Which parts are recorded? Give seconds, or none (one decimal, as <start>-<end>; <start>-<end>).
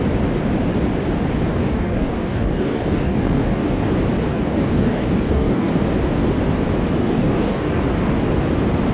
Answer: 0.0-1.5; 3.9-4.3; 5.7-7.0; 7.8-8.9